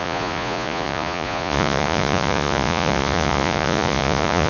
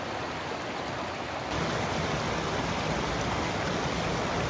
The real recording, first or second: second